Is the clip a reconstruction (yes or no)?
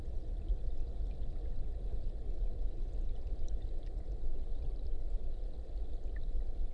no